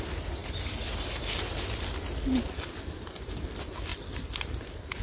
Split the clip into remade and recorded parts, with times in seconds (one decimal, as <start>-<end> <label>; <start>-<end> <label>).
0.0-5.0 recorded